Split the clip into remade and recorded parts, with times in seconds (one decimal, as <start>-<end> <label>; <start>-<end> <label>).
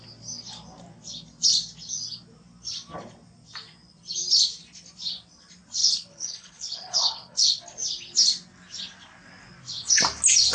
0.0-5.8 recorded; 5.8-7.6 remade; 7.6-10.5 recorded